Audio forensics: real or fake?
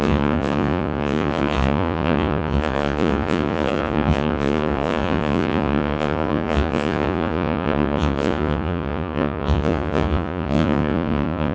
fake